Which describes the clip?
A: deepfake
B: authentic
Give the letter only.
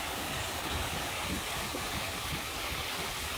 A